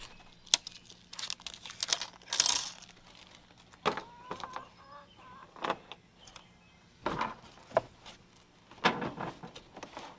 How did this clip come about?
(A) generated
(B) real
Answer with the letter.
B